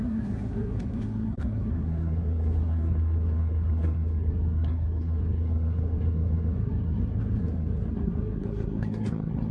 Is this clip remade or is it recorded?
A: remade